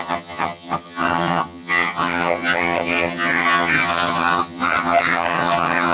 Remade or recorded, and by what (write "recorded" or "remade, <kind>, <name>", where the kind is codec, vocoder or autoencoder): remade, vocoder, HiFi-GAN